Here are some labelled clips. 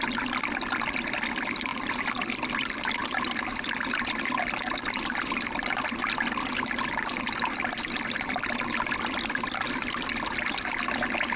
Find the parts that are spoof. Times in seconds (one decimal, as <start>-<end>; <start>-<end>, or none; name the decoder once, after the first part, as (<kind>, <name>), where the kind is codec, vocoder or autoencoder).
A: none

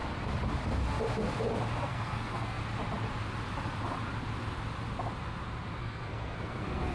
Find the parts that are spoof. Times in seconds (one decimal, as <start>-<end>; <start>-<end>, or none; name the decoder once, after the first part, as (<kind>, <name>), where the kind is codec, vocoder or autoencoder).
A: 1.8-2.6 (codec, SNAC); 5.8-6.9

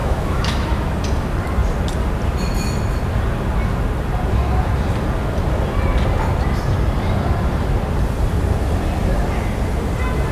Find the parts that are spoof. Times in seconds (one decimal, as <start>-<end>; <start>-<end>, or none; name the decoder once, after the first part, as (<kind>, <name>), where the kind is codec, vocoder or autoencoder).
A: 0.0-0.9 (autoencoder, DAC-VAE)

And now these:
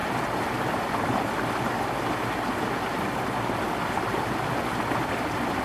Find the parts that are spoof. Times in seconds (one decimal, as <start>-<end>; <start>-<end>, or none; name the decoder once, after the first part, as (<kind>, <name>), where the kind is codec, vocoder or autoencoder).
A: none

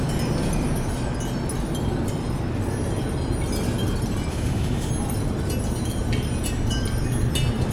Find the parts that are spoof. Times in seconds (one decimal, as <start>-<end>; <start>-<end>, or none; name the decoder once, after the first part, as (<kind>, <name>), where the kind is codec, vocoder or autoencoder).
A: 4.3-4.9 (autoencoder, DAC-VAE)

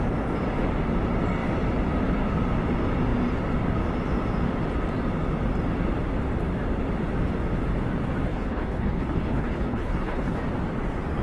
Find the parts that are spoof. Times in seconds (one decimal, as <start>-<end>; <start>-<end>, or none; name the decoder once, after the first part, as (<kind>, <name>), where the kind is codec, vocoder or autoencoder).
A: 8.3-10.4 (codec, HILCodec)